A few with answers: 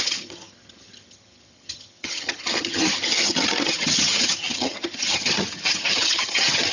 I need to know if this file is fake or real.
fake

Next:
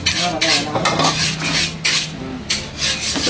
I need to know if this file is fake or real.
real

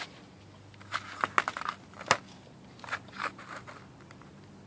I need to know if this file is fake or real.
real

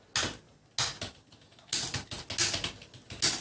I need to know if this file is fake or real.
real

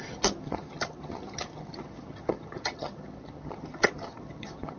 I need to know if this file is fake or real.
fake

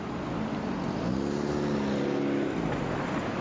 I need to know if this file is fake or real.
real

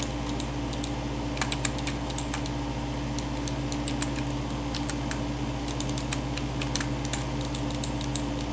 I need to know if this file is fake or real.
real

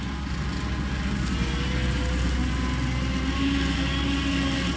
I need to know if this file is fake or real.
real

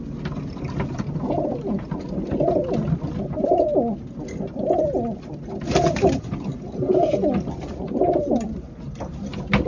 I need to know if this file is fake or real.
real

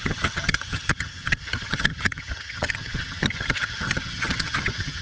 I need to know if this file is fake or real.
fake